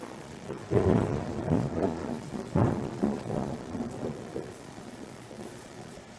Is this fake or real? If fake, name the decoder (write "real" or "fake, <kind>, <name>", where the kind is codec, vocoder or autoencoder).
fake, vocoder, Vocos